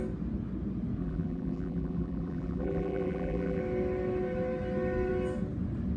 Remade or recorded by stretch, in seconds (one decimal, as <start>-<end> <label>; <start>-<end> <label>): 0.0-1.0 recorded; 1.0-3.6 remade; 3.6-6.0 recorded